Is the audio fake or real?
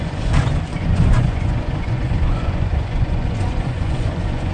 fake